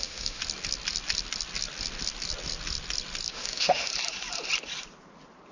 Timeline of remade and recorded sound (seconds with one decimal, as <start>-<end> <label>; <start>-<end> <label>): 0.0-0.4 remade; 0.4-3.3 recorded; 3.3-3.9 remade; 3.9-5.5 recorded